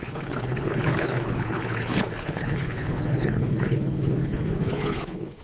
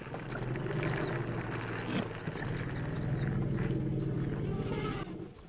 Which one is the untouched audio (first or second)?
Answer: second